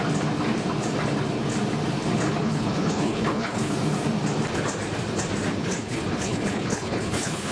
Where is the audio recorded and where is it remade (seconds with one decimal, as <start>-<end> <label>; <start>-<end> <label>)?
0.0-2.4 recorded; 2.4-3.7 remade; 3.7-5.6 recorded; 5.6-7.5 remade